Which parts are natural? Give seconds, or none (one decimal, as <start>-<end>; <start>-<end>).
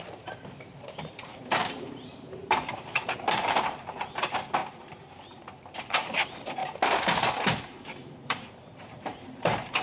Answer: 4.6-5.4; 6.6-7.6